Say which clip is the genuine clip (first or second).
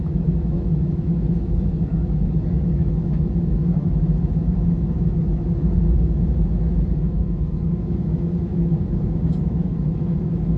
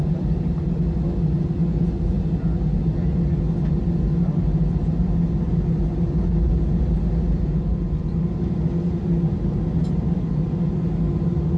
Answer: second